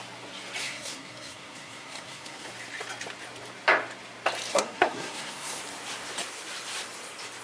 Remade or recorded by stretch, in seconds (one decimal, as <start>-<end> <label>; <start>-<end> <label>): 0.0-0.6 recorded; 0.6-2.5 remade; 2.5-4.5 recorded; 4.5-5.6 remade; 5.6-7.4 recorded